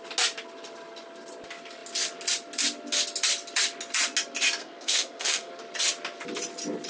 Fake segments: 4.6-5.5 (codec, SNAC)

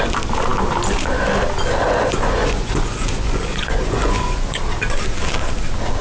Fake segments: 1.8-4.6 (vocoder, Vocos)

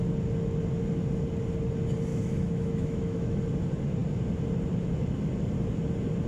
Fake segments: 2.1-3.4 (autoencoder, DAC-VAE)